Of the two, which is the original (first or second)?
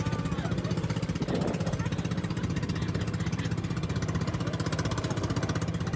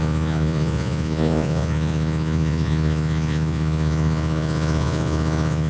first